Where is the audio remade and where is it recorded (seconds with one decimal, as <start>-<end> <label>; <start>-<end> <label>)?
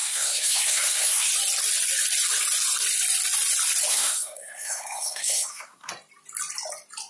0.0-1.3 remade; 1.3-3.9 recorded; 3.9-5.9 remade; 5.9-7.1 recorded